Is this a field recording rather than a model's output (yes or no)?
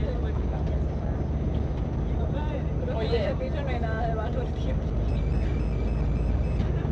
yes